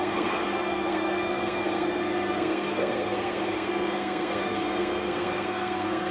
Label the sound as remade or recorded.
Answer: remade